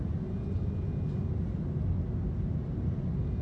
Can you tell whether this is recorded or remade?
recorded